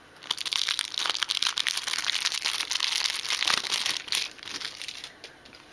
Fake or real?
real